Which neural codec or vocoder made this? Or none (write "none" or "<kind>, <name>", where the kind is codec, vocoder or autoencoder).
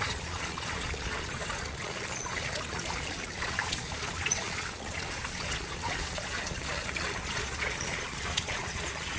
vocoder, Vocos